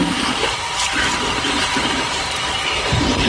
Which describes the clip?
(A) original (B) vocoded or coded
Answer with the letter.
B